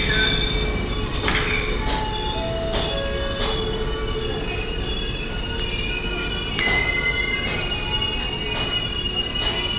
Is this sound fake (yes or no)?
no